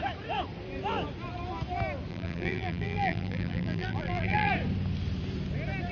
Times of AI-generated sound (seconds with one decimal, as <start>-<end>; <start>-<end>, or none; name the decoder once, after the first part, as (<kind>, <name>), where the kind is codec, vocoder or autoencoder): 2.1-4.5 (vocoder, BigVGAN v2)